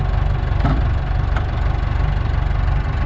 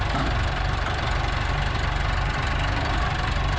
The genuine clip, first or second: first